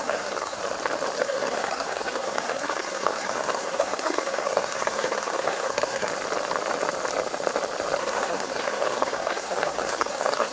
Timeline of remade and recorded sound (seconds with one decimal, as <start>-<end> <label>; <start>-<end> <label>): 0.0-0.6 remade; 0.6-1.2 recorded; 1.2-6.1 remade; 6.1-8.0 recorded; 8.0-10.5 remade